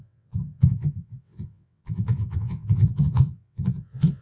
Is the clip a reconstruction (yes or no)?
yes